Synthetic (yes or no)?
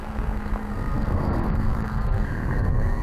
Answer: yes